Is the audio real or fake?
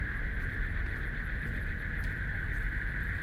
real